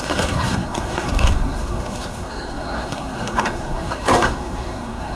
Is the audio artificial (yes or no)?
yes